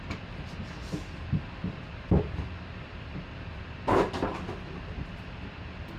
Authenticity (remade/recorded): recorded